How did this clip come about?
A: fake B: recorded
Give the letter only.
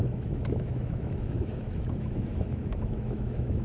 A